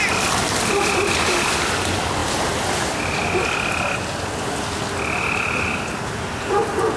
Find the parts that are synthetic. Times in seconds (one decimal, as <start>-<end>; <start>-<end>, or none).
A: none